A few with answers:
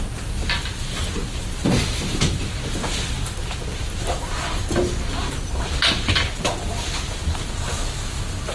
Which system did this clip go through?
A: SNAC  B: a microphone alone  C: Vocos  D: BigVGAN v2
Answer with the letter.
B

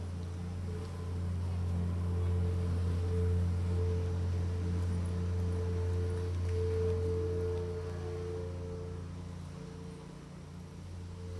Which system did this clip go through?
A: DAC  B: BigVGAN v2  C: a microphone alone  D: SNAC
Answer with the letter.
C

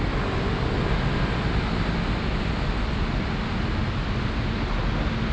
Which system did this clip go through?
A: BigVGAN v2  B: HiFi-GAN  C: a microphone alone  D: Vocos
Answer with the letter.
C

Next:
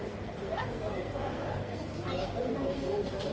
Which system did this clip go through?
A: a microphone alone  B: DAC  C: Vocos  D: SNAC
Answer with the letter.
D